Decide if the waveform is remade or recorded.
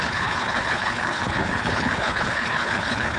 remade